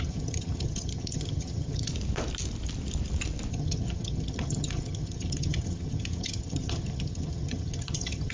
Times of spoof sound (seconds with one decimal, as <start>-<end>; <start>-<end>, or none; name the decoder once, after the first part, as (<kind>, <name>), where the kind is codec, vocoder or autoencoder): 0.0-1.9 (vocoder, HiFi-GAN); 3.5-8.3